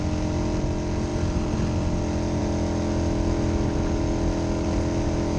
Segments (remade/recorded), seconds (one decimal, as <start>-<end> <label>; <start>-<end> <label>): 0.0-5.4 recorded